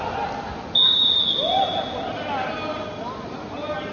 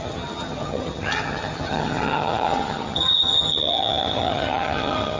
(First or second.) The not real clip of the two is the second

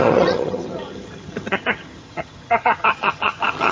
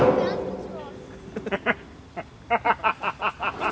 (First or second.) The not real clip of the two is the first